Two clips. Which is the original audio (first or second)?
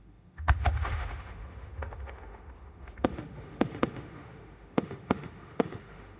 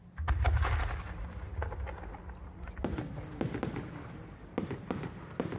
second